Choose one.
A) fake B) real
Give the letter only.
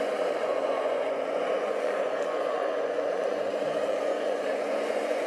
A